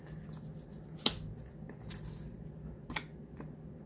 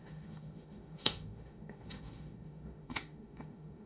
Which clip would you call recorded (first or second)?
first